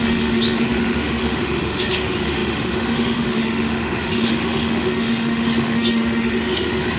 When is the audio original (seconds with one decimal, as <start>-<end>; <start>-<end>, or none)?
none